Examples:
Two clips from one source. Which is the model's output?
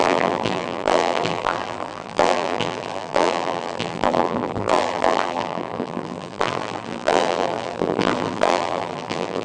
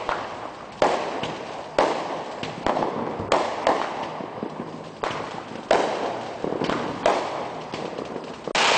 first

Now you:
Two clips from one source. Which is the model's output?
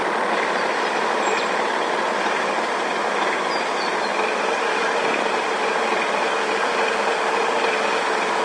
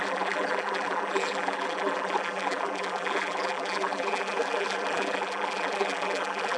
second